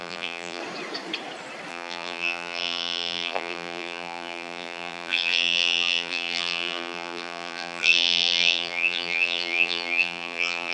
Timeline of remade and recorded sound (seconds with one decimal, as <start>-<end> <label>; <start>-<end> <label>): 0.0-0.6 remade; 0.6-1.7 recorded; 1.7-10.7 remade